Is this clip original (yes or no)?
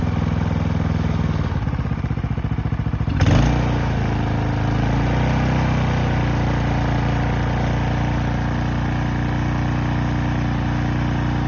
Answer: yes